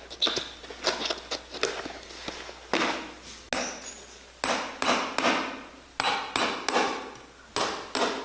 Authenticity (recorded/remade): recorded